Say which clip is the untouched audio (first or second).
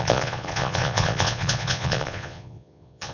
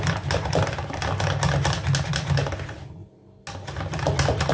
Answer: second